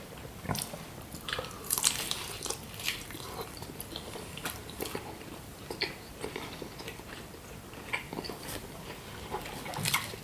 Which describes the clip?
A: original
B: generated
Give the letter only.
B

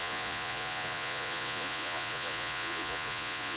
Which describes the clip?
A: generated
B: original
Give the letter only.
A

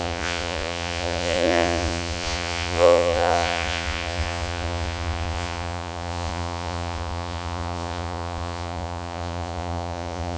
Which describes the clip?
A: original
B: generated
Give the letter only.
B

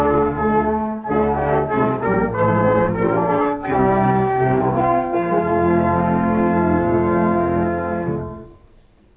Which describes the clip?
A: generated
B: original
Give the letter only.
A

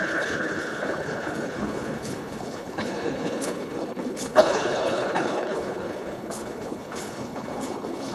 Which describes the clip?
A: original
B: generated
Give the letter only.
B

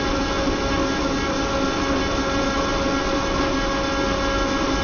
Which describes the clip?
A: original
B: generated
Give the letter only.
A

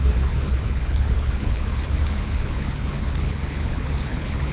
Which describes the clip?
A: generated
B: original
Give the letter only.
A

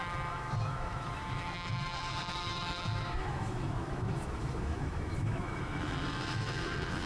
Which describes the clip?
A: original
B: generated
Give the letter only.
B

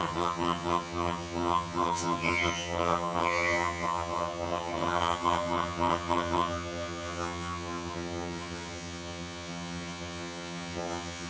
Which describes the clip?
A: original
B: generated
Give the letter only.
B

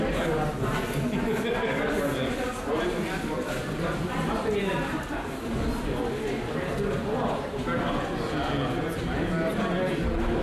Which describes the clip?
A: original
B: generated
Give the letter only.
A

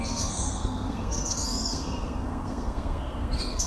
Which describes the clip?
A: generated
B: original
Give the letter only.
A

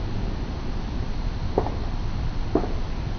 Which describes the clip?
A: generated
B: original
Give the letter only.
B